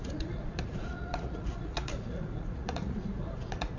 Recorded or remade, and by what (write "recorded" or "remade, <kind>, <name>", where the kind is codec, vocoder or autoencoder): remade, vocoder, Vocos